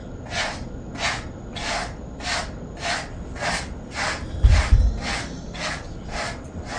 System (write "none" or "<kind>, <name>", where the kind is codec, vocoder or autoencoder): none